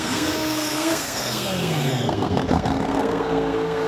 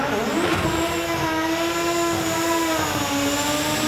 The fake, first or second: first